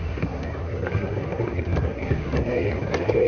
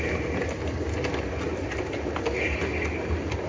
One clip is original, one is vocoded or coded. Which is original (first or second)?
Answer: second